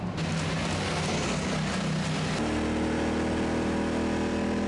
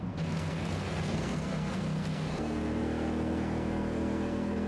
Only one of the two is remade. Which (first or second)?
second